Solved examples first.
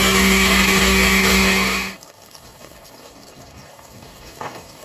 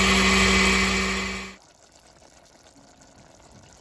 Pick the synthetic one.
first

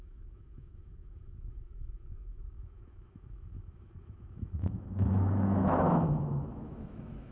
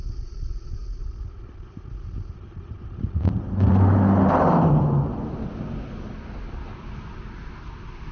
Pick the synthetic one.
first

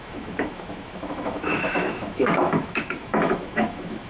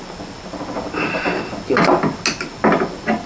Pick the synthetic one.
first